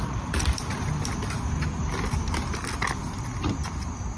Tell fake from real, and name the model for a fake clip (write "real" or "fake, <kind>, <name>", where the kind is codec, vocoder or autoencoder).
real